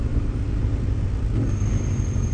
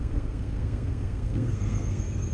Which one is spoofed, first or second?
second